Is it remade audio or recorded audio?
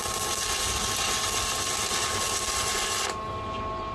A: recorded